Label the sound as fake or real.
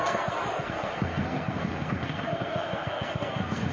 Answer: fake